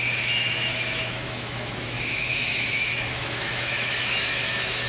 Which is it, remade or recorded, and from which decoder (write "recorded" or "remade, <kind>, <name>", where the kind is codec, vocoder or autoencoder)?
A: remade, autoencoder, DAC-VAE